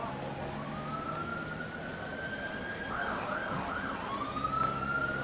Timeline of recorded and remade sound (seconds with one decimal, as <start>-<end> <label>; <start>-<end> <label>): 0.0-5.2 recorded